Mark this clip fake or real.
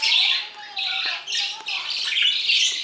real